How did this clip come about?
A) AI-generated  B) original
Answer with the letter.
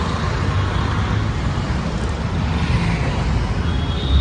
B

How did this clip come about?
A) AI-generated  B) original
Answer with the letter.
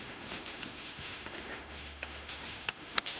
A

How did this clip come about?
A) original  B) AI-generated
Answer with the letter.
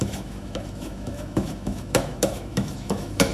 B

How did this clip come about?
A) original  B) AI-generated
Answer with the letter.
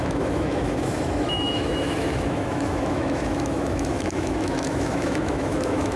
B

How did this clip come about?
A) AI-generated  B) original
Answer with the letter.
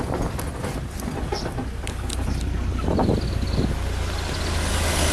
B